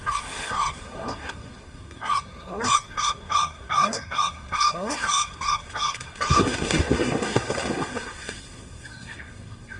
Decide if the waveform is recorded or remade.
remade